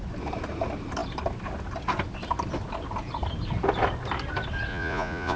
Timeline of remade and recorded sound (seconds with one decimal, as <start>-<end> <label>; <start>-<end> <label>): 0.0-4.7 recorded; 4.7-5.4 remade